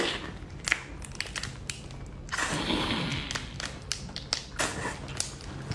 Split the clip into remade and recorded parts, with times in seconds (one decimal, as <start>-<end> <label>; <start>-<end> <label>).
0.0-5.7 recorded